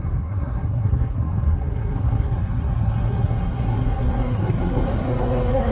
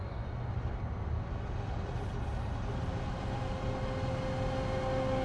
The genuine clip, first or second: second